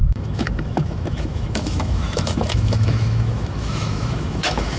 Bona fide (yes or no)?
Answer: no